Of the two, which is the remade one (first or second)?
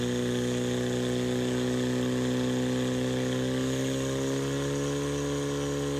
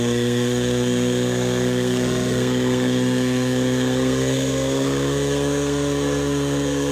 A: second